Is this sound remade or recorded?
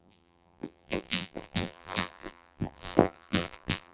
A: remade